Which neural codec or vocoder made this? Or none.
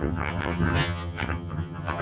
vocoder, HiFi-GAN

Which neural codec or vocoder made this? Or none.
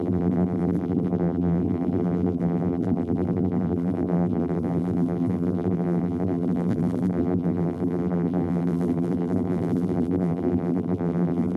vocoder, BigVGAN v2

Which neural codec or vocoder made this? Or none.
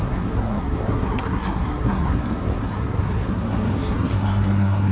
codec, SNAC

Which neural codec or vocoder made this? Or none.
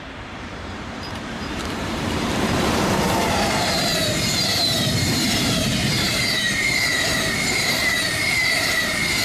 vocoder, BigVGAN v2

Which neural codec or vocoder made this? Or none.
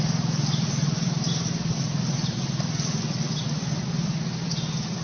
none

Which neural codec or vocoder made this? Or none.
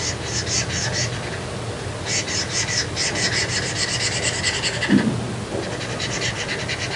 none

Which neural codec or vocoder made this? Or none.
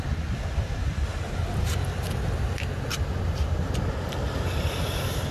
none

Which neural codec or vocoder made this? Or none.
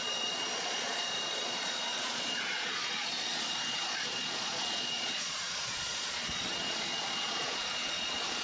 vocoder, Vocos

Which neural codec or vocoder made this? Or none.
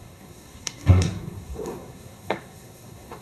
codec, SNAC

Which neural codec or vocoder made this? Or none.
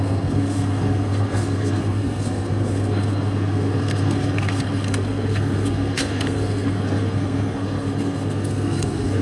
codec, SNAC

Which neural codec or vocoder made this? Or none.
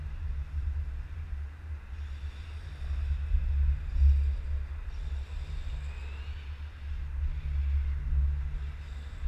none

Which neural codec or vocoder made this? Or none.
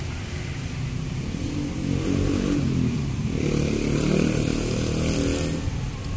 none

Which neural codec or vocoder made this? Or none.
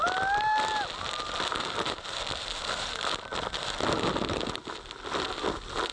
none